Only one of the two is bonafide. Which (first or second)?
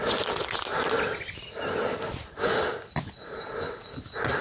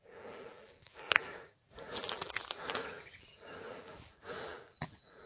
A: first